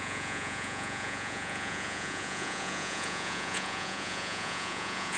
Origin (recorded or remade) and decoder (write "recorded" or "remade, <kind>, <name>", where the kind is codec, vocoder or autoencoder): remade, vocoder, Vocos